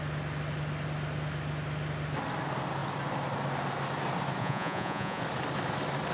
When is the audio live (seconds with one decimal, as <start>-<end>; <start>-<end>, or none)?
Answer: 0.0-4.4; 5.2-6.1